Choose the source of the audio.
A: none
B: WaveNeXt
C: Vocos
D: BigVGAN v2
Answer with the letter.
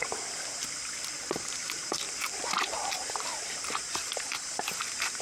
D